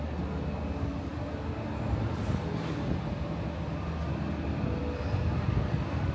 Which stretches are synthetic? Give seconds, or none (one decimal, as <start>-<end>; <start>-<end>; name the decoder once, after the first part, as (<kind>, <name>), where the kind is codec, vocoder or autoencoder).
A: none